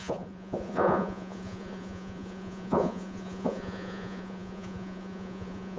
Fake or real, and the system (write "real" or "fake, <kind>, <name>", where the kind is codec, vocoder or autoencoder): fake, vocoder, Vocos